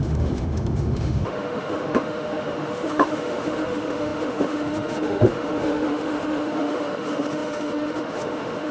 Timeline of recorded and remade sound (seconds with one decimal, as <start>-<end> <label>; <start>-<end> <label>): 0.0-8.7 remade